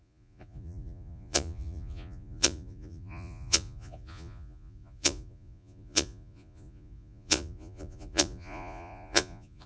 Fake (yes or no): yes